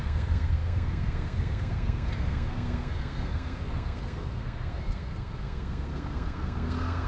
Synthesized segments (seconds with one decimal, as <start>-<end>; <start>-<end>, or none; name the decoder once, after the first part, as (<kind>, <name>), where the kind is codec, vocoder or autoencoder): 0.0-7.1 (codec, SNAC)